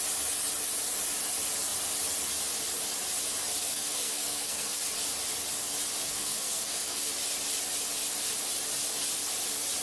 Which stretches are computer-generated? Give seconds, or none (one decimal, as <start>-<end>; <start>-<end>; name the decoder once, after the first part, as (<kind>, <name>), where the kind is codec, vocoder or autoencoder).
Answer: 3.6-4.9 (codec, SNAC); 6.0-7.1